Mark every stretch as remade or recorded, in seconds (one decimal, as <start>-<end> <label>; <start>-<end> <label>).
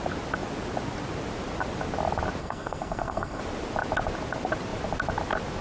0.0-2.4 recorded; 2.4-3.4 remade; 3.4-5.6 recorded